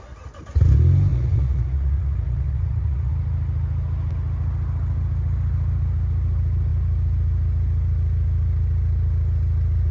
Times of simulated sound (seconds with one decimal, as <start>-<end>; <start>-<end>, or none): 1.1-3.1